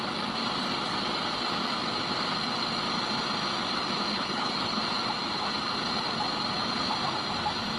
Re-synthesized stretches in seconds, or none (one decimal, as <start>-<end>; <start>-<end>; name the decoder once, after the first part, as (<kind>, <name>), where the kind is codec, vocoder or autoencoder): 4.1-4.8 (codec, HILCodec)